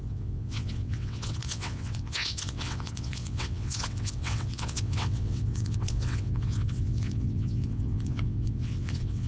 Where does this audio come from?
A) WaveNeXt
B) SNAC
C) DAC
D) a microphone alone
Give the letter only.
A